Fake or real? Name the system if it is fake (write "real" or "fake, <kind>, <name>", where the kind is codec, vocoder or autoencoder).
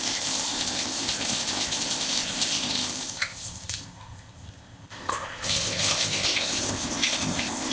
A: fake, codec, ZipCodec